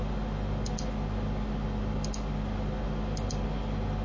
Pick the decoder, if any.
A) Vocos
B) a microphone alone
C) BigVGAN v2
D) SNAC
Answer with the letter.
B